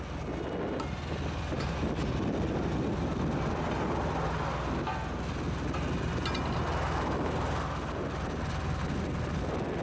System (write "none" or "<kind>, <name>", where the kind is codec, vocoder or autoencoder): none